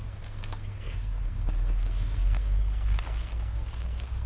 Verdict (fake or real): fake